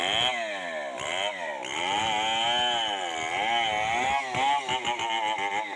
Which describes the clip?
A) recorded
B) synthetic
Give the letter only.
A